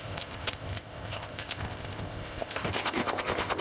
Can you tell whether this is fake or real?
fake